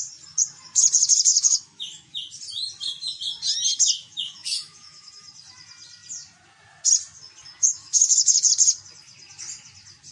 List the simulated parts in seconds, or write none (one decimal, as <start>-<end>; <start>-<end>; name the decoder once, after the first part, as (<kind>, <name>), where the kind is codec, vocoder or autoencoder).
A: 1.3-2.1 (autoencoder, DAC-VAE); 4.0-5.1; 7.7-8.5